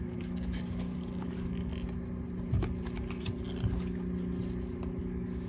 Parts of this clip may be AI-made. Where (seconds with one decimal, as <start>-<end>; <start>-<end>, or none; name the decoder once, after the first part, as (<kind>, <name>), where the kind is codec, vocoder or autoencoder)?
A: 0.0-1.7 (codec, DAC); 5.0-5.5